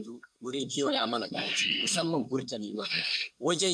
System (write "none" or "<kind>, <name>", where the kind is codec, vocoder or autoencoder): codec, SNAC